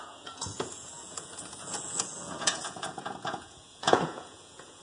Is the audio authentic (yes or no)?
no